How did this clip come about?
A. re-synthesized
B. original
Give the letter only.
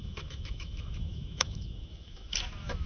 A